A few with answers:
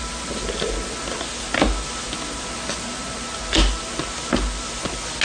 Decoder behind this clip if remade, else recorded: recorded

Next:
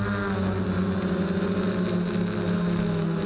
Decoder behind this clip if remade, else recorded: recorded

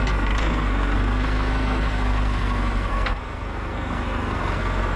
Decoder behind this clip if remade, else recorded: remade, codec, SNAC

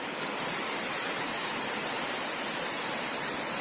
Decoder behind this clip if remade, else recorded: recorded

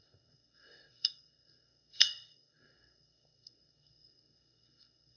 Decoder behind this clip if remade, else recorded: remade, codec, SNAC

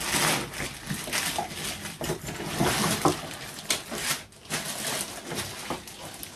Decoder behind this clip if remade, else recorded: recorded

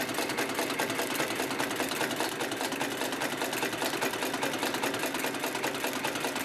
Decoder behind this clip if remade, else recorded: recorded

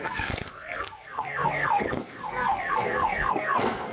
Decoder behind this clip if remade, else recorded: remade, codec, SNAC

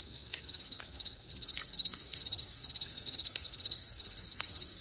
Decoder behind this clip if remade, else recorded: remade, codec, SNAC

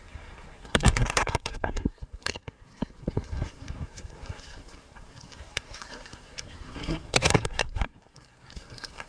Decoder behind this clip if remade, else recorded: remade, codec, SNAC